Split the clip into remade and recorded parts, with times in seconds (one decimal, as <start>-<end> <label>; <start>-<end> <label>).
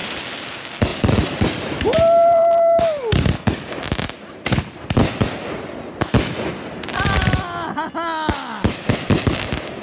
0.0-0.5 remade; 0.5-0.9 recorded; 0.9-2.8 remade; 2.8-9.8 recorded